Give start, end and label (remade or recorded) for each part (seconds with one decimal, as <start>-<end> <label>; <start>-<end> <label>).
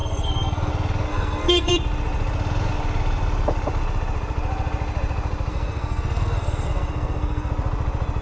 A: 0.0-0.7 remade; 0.7-1.1 recorded; 1.1-1.7 remade; 1.7-5.5 recorded; 5.5-7.5 remade; 7.5-8.2 recorded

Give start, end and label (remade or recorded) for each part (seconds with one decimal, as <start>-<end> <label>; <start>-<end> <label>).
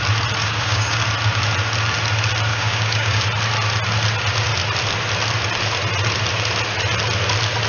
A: 0.0-0.4 recorded; 0.4-1.0 remade; 1.0-2.5 recorded; 2.5-3.2 remade; 3.2-7.7 recorded